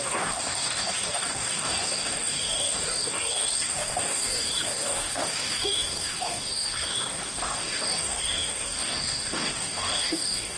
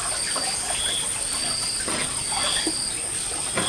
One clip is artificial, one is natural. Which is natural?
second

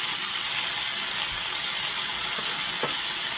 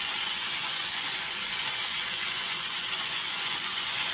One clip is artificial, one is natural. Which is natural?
first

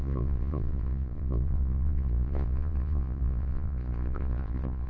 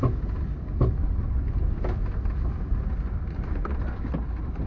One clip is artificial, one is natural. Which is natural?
second